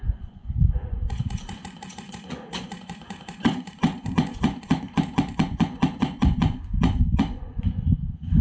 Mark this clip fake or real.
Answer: fake